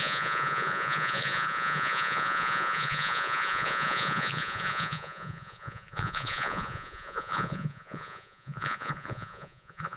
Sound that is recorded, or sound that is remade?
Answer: remade